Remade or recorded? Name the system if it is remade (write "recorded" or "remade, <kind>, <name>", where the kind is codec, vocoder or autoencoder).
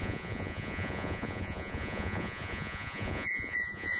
remade, vocoder, Vocos